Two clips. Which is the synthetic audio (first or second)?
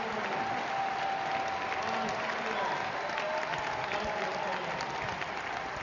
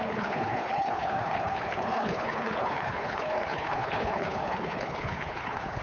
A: second